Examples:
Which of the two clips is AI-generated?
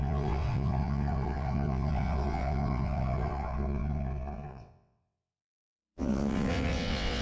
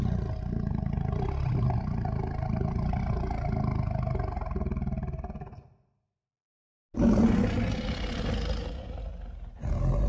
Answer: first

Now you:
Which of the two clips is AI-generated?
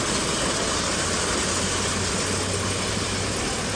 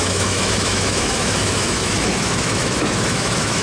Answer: second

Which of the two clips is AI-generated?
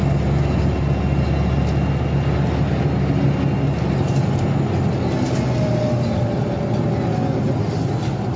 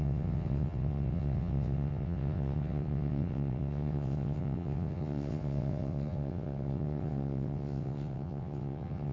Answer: second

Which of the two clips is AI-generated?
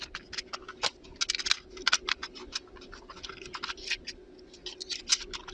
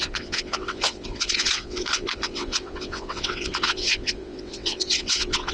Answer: second